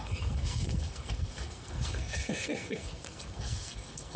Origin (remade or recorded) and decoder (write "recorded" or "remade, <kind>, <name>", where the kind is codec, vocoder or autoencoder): remade, codec, SNAC